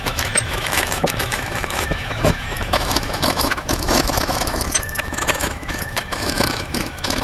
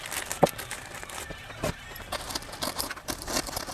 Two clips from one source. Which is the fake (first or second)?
first